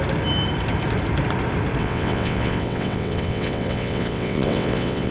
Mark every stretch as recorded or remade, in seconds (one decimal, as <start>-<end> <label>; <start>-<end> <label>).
0.0-1.8 recorded; 1.8-5.1 remade